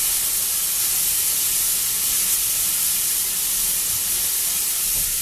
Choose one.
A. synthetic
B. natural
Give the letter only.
B